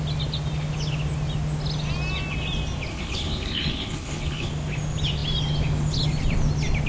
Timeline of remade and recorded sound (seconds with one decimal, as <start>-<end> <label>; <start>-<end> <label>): 0.0-2.9 recorded; 2.9-4.5 remade; 4.5-6.9 recorded

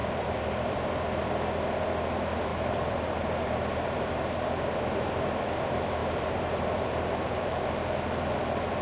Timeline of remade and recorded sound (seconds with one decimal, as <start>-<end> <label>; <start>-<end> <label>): 0.0-0.8 remade; 0.8-2.5 recorded; 2.5-4.3 remade; 4.3-6.0 recorded; 6.0-7.7 remade; 7.7-8.8 recorded

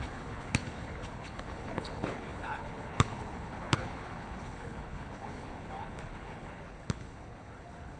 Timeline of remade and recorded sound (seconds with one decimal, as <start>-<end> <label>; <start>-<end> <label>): 0.0-8.0 remade

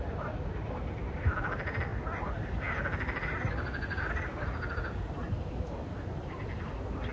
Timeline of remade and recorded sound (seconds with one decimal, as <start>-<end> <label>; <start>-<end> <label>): 0.0-7.1 recorded

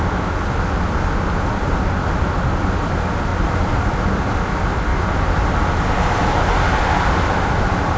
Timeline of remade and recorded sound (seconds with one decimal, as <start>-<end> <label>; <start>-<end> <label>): 0.0-8.0 recorded